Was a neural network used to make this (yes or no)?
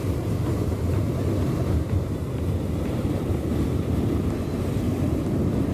no